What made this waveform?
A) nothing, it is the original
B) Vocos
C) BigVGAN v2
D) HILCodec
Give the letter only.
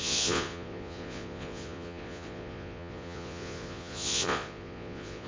B